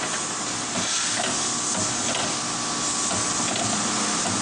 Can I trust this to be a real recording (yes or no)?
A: yes